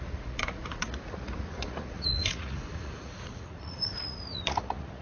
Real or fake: fake